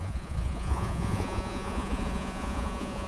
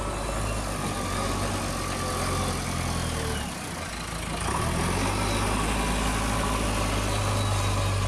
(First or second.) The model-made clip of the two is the first